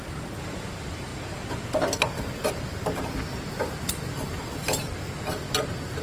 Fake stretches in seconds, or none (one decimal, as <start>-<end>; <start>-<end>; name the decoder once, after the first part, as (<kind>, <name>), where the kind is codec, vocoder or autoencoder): 3.3-4.0 (vocoder, BigVGAN v2)